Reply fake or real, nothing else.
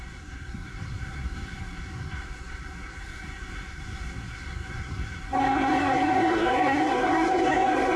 fake